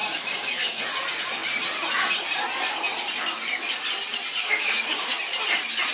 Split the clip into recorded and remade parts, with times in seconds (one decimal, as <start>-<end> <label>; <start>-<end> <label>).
0.0-0.8 remade; 0.8-4.4 recorded; 4.4-5.1 remade; 5.1-5.9 recorded